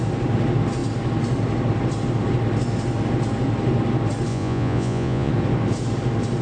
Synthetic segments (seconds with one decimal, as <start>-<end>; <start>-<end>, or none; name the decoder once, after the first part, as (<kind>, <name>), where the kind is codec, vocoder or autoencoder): 4.3-5.3 (vocoder, Vocos)